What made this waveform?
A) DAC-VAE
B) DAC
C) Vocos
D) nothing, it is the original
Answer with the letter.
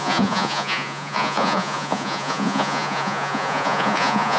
C